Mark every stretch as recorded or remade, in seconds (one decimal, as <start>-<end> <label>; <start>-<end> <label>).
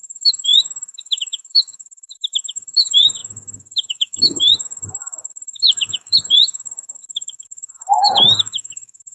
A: 0.0-9.1 remade